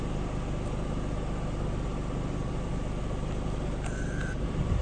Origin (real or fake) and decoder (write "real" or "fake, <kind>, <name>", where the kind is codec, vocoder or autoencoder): real